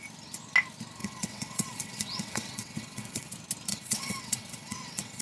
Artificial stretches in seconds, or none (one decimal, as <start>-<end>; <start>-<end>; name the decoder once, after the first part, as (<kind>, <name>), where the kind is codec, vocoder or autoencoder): 1.0-3.3 (vocoder, WaveNeXt); 3.7-5.2